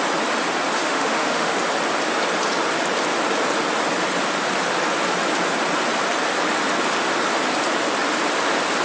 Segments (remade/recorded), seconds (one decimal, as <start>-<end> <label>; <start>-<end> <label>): 0.0-0.8 recorded; 0.8-1.6 remade; 1.6-8.8 recorded